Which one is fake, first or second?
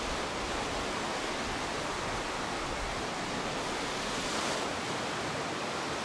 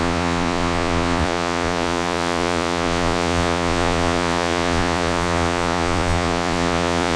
second